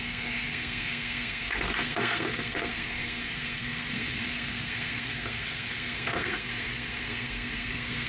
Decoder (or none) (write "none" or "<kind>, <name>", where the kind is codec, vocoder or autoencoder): codec, SNAC